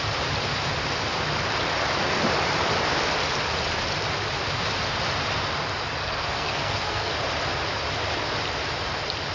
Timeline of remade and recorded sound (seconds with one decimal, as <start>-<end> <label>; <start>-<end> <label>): 0.0-6.0 recorded; 6.0-7.1 remade; 7.1-9.3 recorded